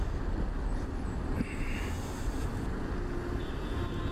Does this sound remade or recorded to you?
recorded